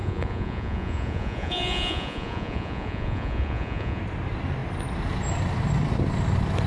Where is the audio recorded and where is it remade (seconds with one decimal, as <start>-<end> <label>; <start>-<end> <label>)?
0.0-4.0 remade; 4.0-6.7 recorded